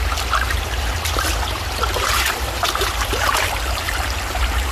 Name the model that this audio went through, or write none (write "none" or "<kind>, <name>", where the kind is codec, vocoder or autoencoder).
vocoder, BigVGAN v2